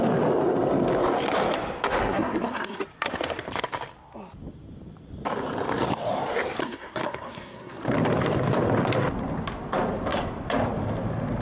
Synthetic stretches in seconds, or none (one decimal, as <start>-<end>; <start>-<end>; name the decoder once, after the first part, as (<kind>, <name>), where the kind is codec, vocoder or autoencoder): 2.0-2.8 (codec, SNAC); 6.6-7.8